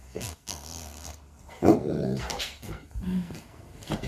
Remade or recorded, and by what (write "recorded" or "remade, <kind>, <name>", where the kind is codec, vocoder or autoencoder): remade, codec, SNAC